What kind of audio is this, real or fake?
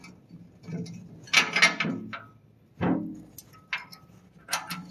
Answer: real